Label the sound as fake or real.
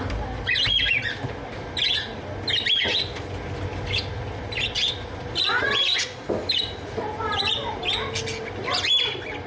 real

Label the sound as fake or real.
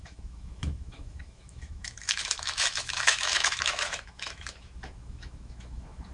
fake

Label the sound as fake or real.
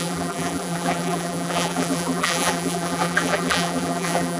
fake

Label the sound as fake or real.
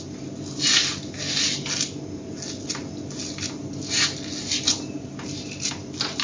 real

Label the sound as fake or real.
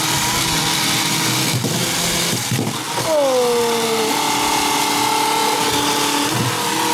real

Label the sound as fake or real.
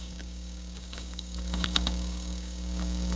fake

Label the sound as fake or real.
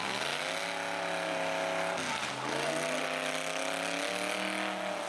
real